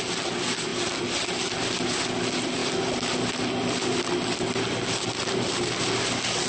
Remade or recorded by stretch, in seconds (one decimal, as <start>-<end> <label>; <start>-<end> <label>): 0.0-6.5 recorded